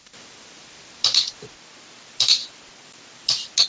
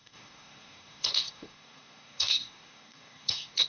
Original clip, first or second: first